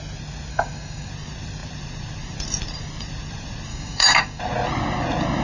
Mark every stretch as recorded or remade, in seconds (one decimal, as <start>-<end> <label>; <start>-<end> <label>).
0.0-0.5 recorded; 0.5-1.1 remade; 1.1-3.7 recorded; 3.7-4.4 remade; 4.4-5.4 recorded